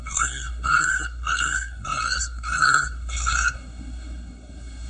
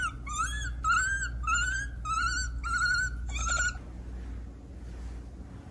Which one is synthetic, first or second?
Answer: first